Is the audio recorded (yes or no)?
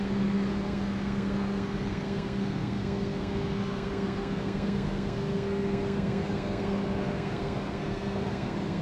no